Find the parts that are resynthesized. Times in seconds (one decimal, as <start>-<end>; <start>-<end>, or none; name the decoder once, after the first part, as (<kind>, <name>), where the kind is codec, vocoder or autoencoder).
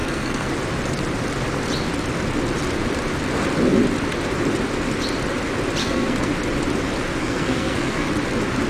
0.0-0.5 (codec, SNAC); 5.8-6.3; 7.2-8.1